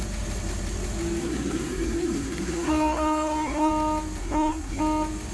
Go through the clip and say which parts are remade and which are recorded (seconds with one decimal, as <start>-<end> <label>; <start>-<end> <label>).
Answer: 0.0-1.2 recorded; 1.2-3.7 remade; 3.7-4.2 recorded; 4.2-4.8 remade; 4.8-5.3 recorded